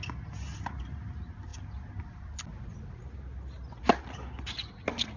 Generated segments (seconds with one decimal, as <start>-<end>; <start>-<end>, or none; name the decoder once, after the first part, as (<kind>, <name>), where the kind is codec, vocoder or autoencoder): none